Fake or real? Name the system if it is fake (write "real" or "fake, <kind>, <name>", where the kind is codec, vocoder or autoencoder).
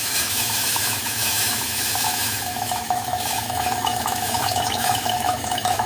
fake, autoencoder, DAC-VAE